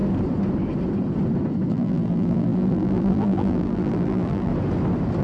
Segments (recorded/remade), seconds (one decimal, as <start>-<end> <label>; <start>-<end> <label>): 0.0-1.7 recorded; 1.7-4.5 remade; 4.5-5.2 recorded